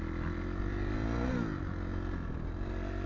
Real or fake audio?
real